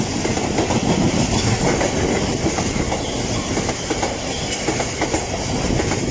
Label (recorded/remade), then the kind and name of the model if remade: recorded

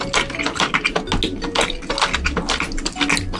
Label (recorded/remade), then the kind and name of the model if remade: recorded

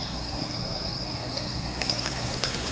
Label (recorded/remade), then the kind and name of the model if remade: remade, codec, SNAC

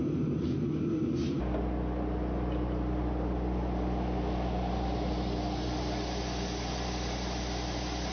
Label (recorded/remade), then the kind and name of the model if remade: recorded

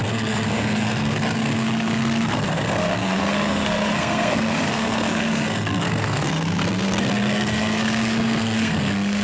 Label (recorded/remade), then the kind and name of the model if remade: remade, codec, SNAC